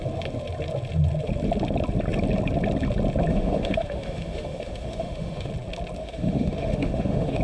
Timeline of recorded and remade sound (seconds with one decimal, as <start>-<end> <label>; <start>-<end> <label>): 0.0-3.3 recorded; 3.3-5.5 remade; 5.5-6.0 recorded; 6.0-7.4 remade